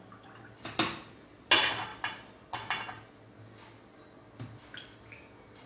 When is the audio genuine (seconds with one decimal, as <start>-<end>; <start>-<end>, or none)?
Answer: 0.0-5.7